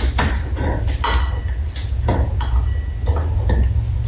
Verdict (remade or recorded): recorded